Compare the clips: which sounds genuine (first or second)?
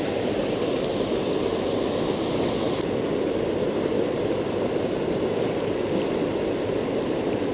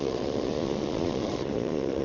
first